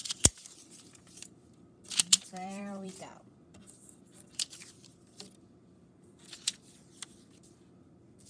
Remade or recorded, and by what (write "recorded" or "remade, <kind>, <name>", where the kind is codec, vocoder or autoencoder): remade, vocoder, BigVGAN v2